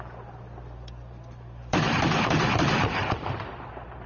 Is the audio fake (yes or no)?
yes